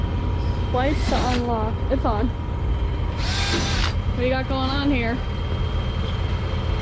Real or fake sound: real